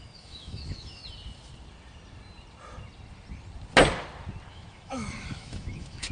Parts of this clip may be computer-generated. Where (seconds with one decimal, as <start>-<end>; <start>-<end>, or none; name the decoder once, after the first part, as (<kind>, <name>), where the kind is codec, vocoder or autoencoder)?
0.0-1.0 (autoencoder, DAC-VAE); 4.5-6.1